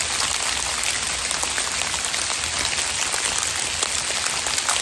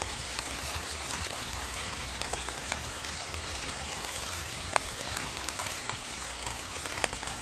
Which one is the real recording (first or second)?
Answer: first